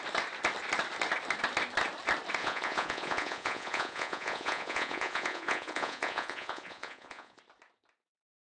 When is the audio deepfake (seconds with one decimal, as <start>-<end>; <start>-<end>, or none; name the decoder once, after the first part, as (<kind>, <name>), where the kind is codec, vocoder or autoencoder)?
2.4-7.4 (vocoder, Vocos)